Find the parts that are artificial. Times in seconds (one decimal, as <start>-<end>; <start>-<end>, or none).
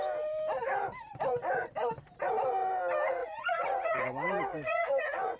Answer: 3.2-4.0; 4.5-5.4